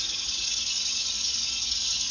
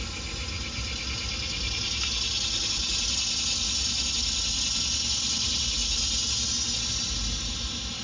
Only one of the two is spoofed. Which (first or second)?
first